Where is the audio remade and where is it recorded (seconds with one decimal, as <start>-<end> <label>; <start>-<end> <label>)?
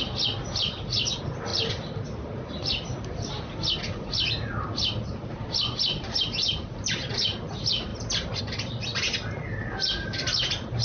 0.0-10.8 recorded